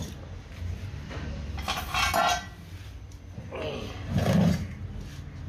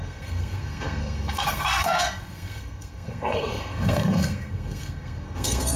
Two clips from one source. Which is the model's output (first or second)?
second